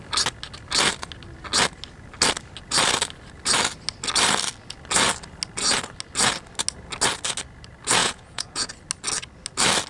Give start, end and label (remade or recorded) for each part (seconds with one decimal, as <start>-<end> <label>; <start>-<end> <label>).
0.0-8.0 recorded; 8.0-8.7 remade; 8.7-9.9 recorded